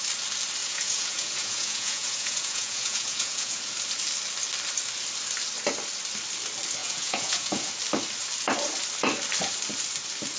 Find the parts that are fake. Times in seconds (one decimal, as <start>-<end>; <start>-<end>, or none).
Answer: 0.6-3.6; 6.8-7.7